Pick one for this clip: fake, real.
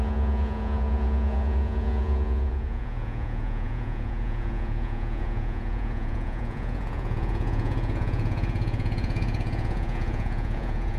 fake